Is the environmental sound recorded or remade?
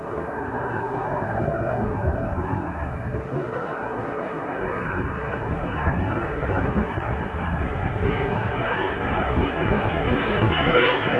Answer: remade